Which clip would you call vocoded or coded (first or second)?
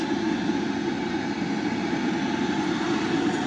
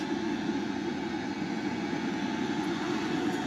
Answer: second